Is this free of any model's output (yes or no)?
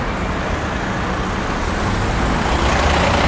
yes